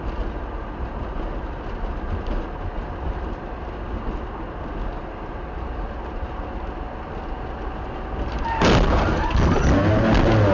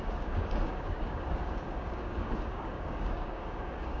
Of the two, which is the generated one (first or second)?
second